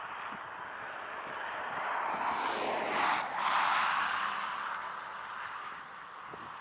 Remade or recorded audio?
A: recorded